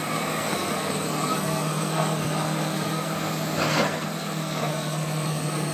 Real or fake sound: fake